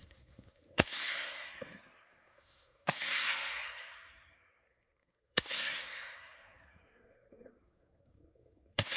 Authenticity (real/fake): fake